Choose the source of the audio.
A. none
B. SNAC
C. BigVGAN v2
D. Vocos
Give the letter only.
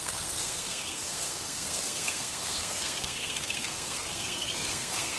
B